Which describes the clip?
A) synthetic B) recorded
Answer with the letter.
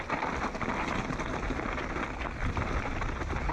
B